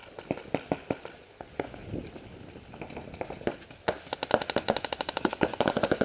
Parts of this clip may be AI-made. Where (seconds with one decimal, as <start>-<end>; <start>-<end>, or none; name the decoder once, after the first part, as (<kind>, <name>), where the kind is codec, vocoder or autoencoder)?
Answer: 1.2-1.8 (vocoder, Vocos); 4.6-6.0